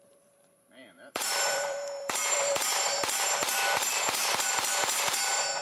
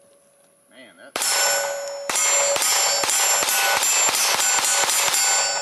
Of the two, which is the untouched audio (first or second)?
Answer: second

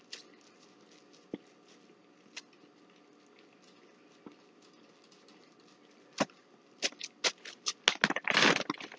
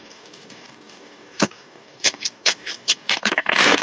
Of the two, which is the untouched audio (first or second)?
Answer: first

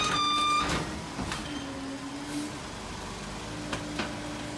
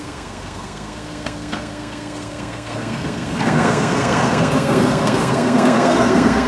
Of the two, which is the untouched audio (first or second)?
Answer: first